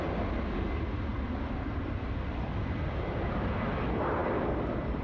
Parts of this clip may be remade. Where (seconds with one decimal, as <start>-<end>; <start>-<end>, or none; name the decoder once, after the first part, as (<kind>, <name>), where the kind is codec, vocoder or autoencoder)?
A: 1.1-3.3 (vocoder, BigVGAN v2)